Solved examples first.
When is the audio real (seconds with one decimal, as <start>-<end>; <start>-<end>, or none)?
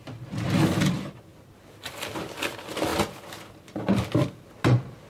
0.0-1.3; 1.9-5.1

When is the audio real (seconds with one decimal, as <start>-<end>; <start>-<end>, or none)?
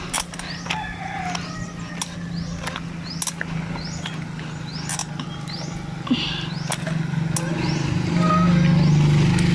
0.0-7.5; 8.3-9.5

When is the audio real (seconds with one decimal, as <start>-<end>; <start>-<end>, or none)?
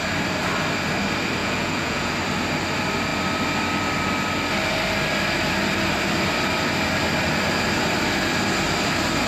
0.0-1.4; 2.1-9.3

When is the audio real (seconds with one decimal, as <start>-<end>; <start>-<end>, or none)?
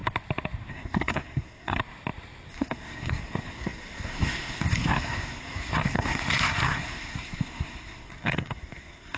0.0-0.7; 1.8-2.5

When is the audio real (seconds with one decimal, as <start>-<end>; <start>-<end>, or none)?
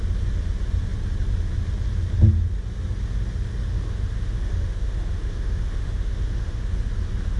0.0-3.7; 6.7-7.4